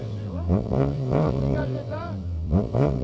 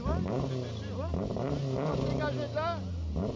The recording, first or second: second